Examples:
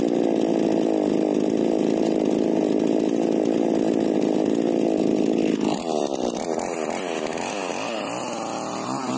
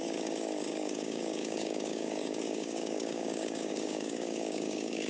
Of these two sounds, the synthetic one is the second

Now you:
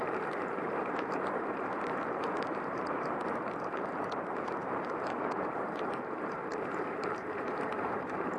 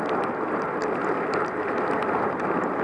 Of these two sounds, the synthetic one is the first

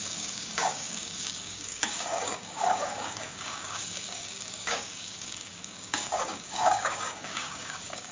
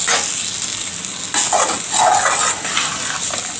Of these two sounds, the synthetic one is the first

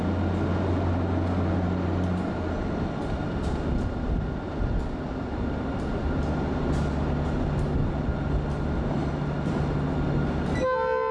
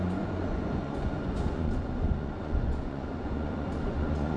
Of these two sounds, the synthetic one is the second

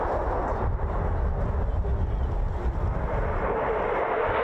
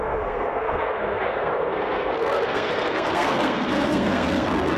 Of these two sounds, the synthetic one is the second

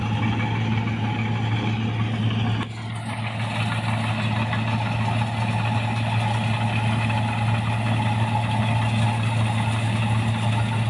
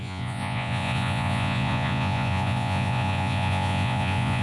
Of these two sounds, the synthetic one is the second